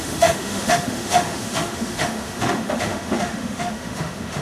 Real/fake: fake